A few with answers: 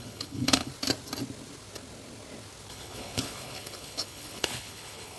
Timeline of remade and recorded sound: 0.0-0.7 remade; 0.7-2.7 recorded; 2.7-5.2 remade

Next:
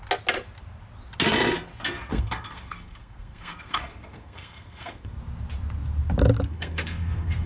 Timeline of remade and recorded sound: 0.0-2.1 recorded; 2.1-5.2 remade; 5.2-6.5 recorded; 6.5-7.5 remade

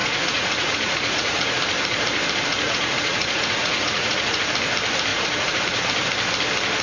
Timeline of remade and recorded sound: 0.0-1.5 remade; 1.5-2.5 recorded; 2.5-4.4 remade; 4.4-5.1 recorded; 5.1-5.6 remade; 5.6-6.8 recorded

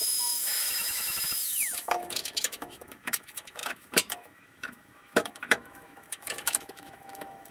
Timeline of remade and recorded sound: 0.0-7.5 remade

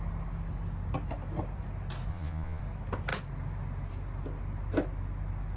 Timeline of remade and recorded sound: 0.0-2.1 recorded; 2.1-2.6 remade; 2.6-5.6 recorded